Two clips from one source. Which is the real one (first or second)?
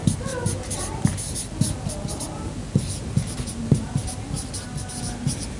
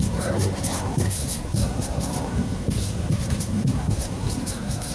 first